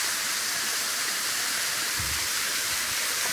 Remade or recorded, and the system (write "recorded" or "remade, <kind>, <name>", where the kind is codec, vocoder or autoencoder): remade, vocoder, BigVGAN v2